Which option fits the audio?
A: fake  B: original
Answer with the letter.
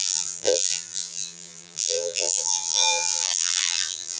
A